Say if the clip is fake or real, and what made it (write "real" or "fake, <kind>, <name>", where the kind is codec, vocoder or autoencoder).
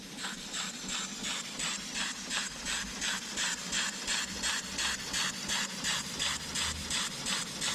fake, vocoder, BigVGAN v2